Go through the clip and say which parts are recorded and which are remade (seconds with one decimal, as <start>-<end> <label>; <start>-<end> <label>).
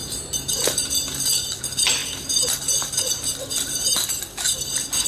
0.0-5.1 recorded